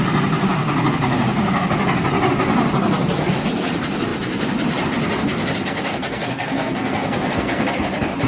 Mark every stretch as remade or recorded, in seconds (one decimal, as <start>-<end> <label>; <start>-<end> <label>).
0.0-5.6 recorded; 5.6-7.7 remade; 7.7-8.3 recorded